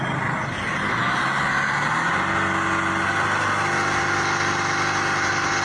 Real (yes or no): yes